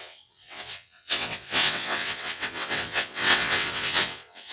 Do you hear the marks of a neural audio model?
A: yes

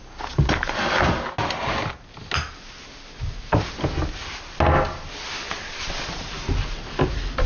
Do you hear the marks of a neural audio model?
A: no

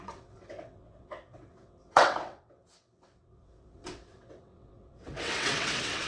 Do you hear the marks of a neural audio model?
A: yes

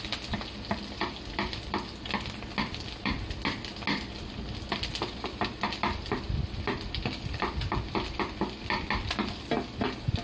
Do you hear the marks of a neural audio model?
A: no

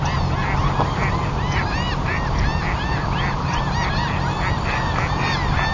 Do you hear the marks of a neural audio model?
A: no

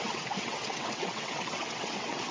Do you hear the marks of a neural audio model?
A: yes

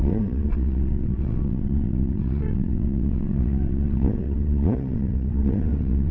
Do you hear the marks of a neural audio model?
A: yes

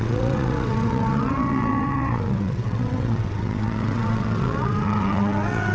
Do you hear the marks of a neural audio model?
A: yes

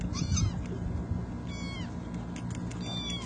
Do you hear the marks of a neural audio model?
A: no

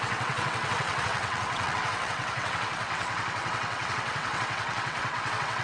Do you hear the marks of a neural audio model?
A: yes